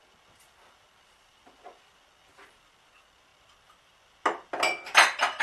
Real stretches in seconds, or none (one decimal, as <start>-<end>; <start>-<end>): 0.0-5.4